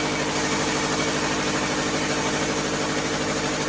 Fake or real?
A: real